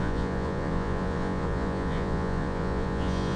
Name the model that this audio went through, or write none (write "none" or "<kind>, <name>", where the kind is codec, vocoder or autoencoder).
vocoder, Vocos